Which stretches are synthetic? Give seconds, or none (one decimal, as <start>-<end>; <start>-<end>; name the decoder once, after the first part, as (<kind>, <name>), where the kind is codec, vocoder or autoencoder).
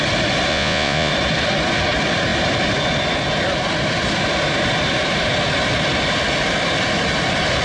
0.5-1.1 (vocoder, Vocos)